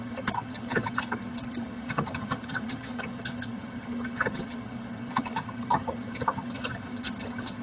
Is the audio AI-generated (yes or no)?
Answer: yes